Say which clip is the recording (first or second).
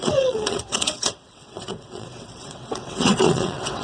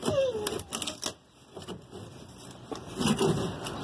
second